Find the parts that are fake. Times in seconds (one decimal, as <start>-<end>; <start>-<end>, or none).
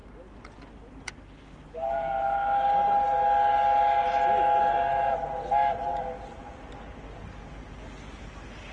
none